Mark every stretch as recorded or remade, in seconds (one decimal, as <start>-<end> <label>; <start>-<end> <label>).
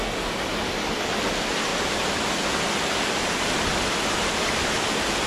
0.0-5.3 recorded